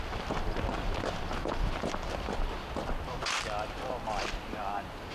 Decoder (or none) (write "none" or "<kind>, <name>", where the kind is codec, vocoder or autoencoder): none